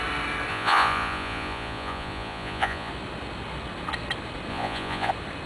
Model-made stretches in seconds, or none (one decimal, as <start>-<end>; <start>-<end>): 0.5-2.9; 4.5-5.1

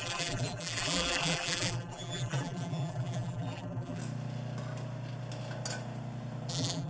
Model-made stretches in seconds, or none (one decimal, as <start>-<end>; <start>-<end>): 0.0-4.0; 6.5-6.9

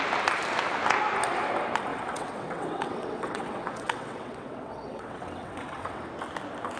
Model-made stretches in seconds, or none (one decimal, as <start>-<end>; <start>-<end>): 1.9-6.0

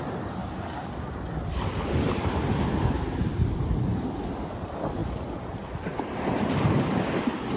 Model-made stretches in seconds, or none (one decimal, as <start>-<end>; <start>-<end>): 0.4-3.3; 3.9-4.5